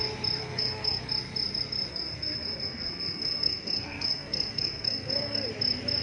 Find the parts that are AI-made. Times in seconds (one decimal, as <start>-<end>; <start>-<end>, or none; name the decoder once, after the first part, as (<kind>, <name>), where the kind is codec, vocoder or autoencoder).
0.4-1.1 (codec, SNAC); 1.9-5.5